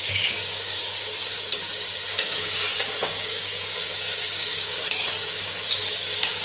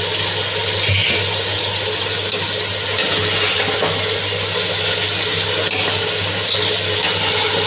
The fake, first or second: first